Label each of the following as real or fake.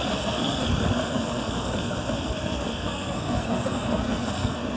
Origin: fake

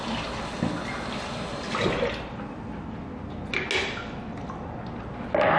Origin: real